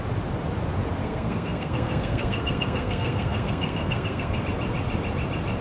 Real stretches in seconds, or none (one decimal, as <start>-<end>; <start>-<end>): 0.0-1.0; 4.4-5.6